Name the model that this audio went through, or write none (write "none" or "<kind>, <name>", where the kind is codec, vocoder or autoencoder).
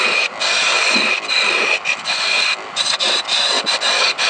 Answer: none